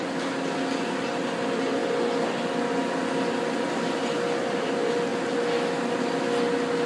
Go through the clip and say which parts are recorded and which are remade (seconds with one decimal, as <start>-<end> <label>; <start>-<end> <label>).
0.0-6.9 recorded